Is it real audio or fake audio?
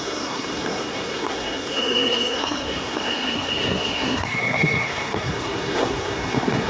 fake